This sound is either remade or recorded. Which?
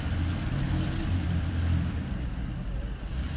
remade